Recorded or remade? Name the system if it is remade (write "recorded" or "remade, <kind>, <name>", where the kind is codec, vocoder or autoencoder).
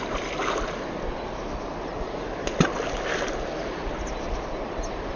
recorded